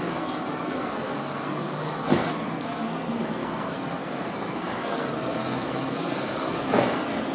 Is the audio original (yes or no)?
no